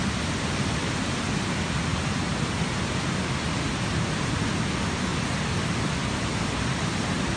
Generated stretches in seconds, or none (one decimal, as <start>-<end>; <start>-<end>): none